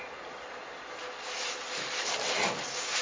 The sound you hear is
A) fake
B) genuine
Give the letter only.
B